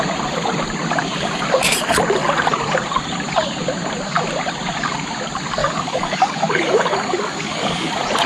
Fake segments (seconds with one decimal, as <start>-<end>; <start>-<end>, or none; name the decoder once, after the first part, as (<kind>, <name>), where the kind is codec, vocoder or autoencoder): 5.6-7.9 (codec, DAC)